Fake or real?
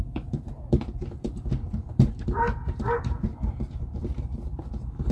fake